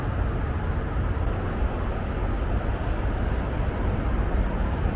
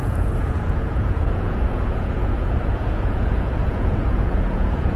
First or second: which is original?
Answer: first